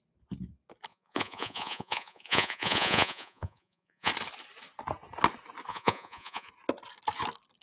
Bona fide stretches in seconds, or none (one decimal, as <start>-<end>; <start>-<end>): 0.0-0.9; 4.1-5.7; 6.5-7.6